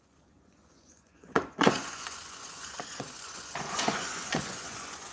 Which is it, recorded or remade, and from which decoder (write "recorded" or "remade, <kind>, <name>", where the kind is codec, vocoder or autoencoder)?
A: remade, vocoder, Vocos